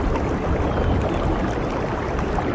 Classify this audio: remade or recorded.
recorded